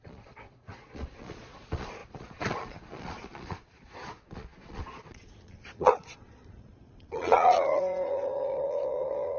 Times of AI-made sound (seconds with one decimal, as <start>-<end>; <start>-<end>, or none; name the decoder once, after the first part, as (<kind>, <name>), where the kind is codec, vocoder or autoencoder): 0.0-9.4 (vocoder, Vocos)